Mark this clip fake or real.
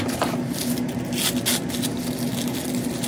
real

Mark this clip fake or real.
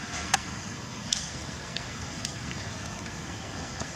fake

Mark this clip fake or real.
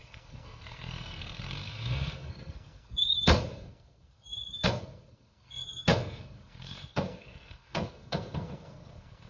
fake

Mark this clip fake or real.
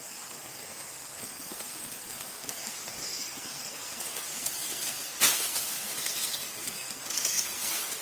fake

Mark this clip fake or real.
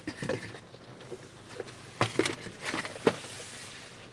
real